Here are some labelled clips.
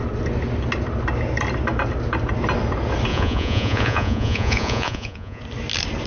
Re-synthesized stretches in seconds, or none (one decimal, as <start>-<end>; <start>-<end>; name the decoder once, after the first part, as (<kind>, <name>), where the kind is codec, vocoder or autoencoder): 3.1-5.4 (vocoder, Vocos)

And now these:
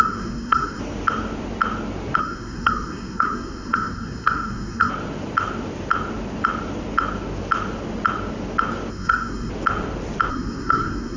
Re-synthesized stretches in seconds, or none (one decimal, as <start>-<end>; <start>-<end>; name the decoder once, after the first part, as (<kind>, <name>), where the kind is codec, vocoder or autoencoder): 0.0-0.8 (codec, SNAC); 2.2-4.9; 8.9-9.5; 10.3-11.2

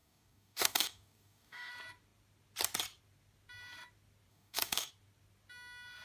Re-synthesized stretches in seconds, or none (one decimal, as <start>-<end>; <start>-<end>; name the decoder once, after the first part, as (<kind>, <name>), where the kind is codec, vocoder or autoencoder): 0.0-1.7 (codec, DAC); 4.3-4.9